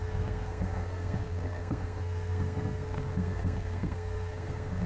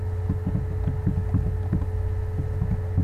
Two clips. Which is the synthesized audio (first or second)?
first